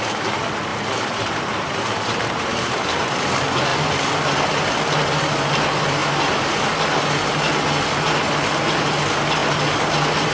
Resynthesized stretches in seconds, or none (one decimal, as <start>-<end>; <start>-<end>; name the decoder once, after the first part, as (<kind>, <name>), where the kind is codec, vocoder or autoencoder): 0.7-3.1 (vocoder, BigVGAN v2); 6.0-6.6